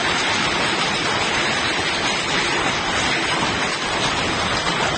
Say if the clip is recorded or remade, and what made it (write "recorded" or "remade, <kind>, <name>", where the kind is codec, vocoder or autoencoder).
recorded